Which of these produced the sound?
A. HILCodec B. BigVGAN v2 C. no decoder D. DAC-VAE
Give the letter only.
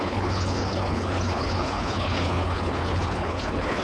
A